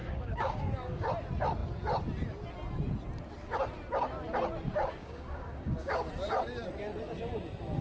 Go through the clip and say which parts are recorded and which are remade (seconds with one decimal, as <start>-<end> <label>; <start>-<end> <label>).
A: 0.0-1.1 remade; 1.1-5.0 recorded; 5.0-6.1 remade; 6.1-7.8 recorded